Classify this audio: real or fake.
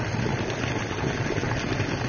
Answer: real